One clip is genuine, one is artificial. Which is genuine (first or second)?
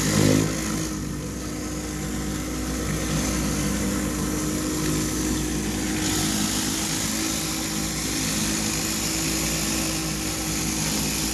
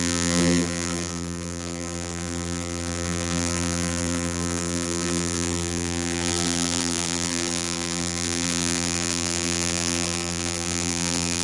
first